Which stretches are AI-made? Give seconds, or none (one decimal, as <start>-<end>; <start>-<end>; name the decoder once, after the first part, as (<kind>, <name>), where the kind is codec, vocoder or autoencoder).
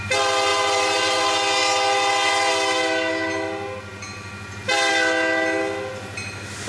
0.5-1.2 (vocoder, BigVGAN v2)